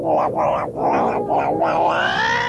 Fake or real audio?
real